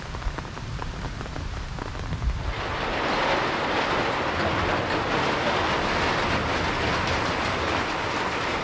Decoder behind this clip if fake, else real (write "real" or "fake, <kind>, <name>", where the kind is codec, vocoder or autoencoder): real